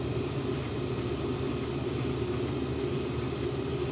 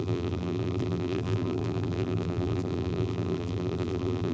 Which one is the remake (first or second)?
second